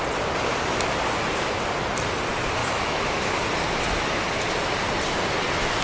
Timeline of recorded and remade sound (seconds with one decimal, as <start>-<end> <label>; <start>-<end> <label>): 0.0-2.6 recorded; 2.6-3.4 remade; 3.4-5.8 recorded